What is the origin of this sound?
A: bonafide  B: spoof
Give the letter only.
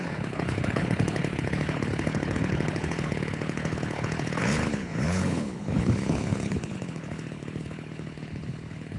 B